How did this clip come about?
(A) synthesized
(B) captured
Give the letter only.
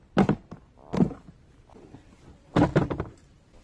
B